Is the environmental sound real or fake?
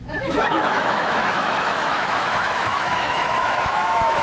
fake